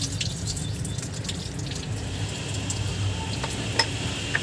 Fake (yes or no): no